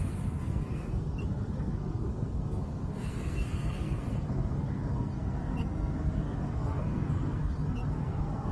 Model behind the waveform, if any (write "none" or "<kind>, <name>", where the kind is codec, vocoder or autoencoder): codec, SNAC